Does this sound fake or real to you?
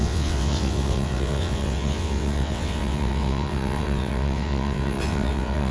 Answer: fake